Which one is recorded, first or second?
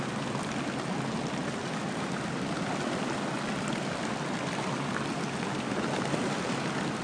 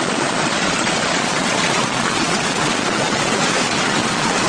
first